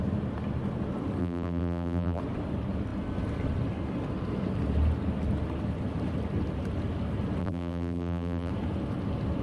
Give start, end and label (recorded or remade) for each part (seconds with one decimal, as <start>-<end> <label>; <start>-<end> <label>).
0.0-1.2 recorded; 1.2-2.2 remade; 2.2-7.4 recorded; 7.4-8.5 remade; 8.5-9.4 recorded